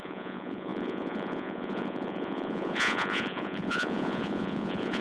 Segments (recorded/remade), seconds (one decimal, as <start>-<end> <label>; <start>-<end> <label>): 0.0-5.0 remade

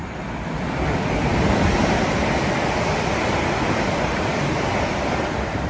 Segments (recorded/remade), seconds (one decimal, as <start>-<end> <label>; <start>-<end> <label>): 0.0-5.7 recorded

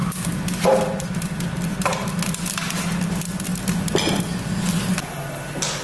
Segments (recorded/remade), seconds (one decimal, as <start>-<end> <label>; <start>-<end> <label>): 0.0-5.8 recorded

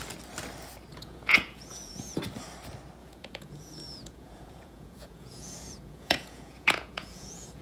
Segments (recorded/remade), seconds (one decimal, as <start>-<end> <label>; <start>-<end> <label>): 0.0-0.9 recorded; 0.9-2.2 remade; 2.2-3.0 recorded; 3.0-7.6 remade

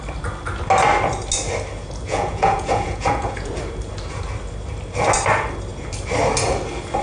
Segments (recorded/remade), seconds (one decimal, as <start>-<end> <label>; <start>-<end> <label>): 0.0-2.1 recorded; 2.1-3.5 remade; 3.5-7.0 recorded

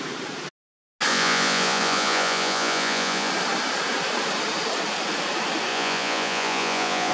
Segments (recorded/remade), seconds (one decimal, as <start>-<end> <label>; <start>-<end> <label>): 0.0-1.1 recorded; 1.1-3.3 remade; 3.3-5.7 recorded; 5.7-7.1 remade

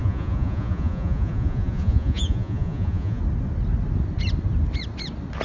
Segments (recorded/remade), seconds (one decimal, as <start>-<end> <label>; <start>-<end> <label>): 0.0-3.2 remade; 3.2-5.4 recorded

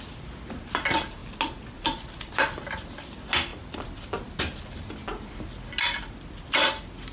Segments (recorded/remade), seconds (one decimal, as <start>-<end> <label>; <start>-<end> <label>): 0.0-7.1 recorded